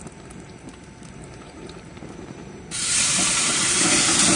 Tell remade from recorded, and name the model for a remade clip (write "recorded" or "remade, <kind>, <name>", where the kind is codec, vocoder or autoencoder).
remade, vocoder, BigVGAN v2